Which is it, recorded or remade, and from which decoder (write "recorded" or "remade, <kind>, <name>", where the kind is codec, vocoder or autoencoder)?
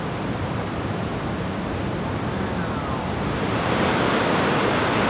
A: recorded